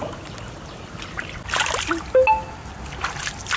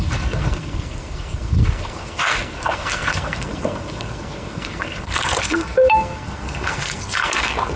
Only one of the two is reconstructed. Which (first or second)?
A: second